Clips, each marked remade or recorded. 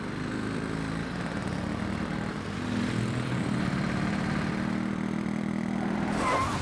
remade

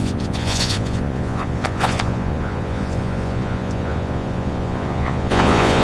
remade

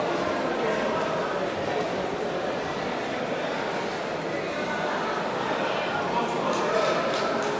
recorded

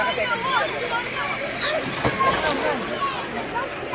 recorded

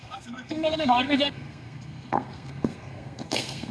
remade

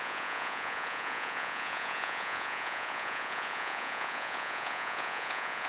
remade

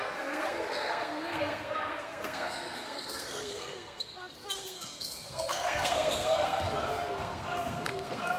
remade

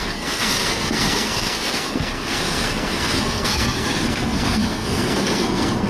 remade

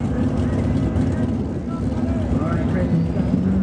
recorded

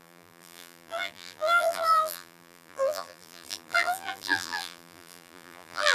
remade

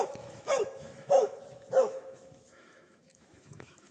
remade